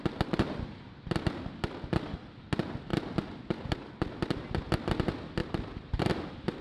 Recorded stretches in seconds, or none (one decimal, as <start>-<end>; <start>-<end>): 0.0-5.4; 6.0-6.6